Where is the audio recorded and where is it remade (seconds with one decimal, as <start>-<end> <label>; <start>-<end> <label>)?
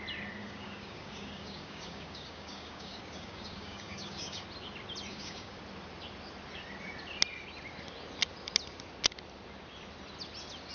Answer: 0.0-0.4 recorded; 0.4-4.4 remade; 4.4-5.1 recorded; 5.1-5.6 remade; 5.6-10.7 recorded